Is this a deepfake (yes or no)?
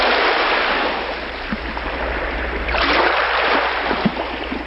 yes